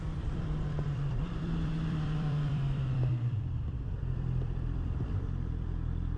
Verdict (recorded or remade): remade